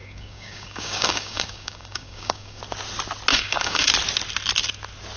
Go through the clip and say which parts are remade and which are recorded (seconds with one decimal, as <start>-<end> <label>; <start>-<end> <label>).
0.0-2.6 remade; 2.6-3.3 recorded; 3.3-3.9 remade; 3.9-5.2 recorded